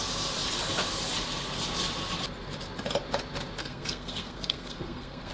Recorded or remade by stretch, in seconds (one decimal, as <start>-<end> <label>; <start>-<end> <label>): 0.0-3.6 recorded; 3.6-5.3 remade